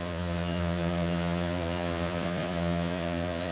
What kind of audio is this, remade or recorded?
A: remade